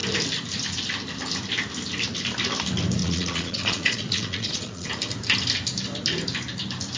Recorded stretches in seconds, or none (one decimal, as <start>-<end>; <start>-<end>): 0.0-3.0; 4.9-7.0